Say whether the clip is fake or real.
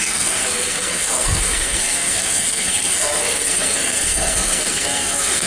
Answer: fake